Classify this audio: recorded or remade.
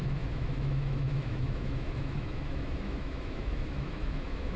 remade